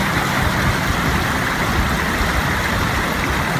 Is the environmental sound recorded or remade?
recorded